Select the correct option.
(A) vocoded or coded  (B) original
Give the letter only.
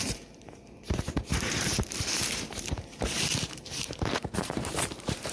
A